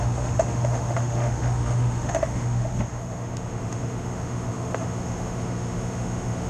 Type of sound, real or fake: fake